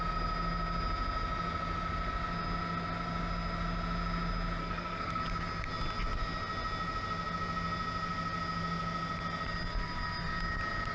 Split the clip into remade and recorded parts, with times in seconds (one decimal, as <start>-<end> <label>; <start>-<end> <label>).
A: 0.0-4.6 recorded; 4.6-5.2 remade; 5.2-10.9 recorded